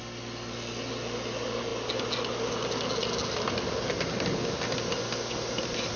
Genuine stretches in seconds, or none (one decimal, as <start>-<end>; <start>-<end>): 0.0-6.0